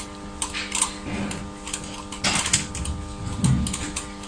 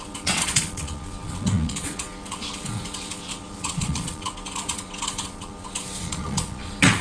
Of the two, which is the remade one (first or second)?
second